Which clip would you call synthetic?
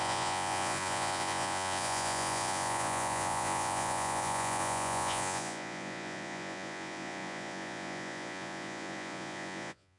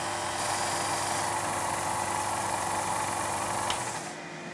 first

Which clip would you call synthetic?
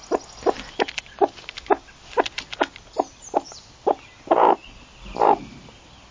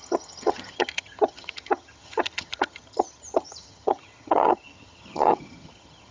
second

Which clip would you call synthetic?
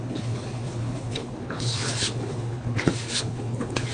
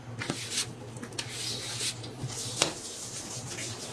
first